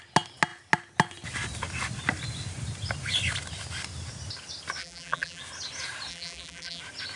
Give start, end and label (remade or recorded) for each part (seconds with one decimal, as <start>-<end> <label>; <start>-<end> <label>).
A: 0.0-4.8 recorded; 4.8-5.4 remade; 5.4-6.1 recorded; 6.1-6.8 remade; 6.8-7.2 recorded